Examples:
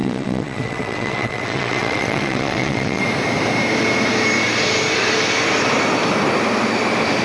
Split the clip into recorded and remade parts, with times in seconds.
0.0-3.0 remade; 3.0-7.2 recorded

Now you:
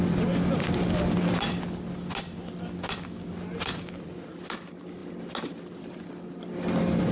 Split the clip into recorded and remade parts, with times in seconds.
0.0-7.1 recorded

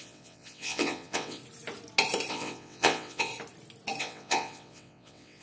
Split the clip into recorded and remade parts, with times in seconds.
0.0-1.4 remade; 1.4-2.3 recorded; 2.3-3.3 remade; 3.3-4.0 recorded; 4.0-5.4 remade

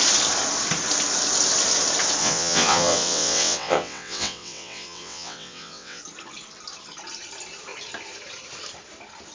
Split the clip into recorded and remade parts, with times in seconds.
0.0-2.2 recorded; 2.2-6.0 remade; 6.0-9.3 recorded